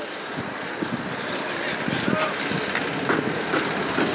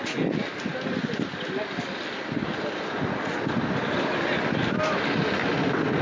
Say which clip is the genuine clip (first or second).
second